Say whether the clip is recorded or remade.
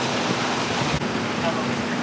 recorded